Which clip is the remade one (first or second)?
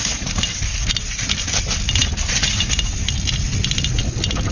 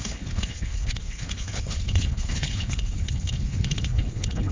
second